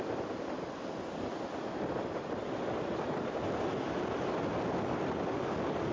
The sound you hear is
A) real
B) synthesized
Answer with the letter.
A